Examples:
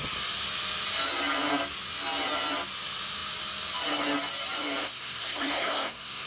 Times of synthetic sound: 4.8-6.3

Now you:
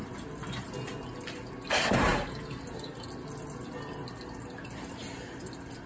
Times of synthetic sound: none